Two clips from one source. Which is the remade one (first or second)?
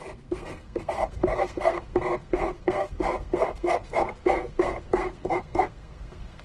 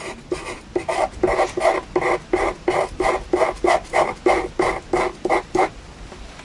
first